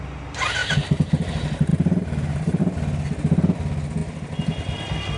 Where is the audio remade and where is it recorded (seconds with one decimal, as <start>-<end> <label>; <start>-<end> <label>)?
0.0-0.6 recorded; 0.6-1.1 remade; 1.1-1.7 recorded; 1.7-2.6 remade; 2.6-5.2 recorded